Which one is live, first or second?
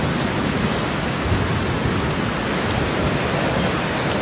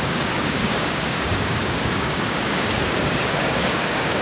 first